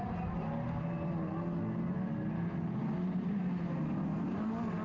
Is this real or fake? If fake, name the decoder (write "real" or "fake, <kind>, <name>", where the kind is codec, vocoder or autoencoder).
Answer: real